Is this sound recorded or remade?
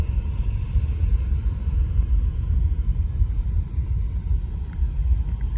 recorded